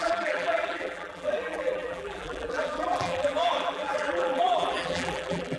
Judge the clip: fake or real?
fake